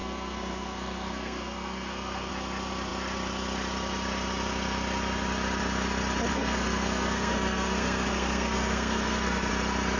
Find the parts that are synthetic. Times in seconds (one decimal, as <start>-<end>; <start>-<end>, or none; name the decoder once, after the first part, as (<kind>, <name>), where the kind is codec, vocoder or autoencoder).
0.0-2.3 (codec, SNAC); 6.3-9.5